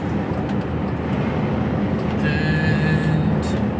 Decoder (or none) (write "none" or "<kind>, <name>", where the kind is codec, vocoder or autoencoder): none